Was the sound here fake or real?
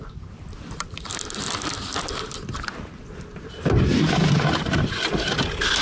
real